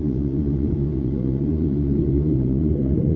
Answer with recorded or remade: remade